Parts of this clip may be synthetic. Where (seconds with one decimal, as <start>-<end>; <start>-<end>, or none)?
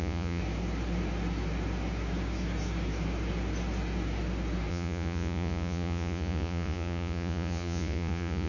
0.0-0.4; 4.7-8.5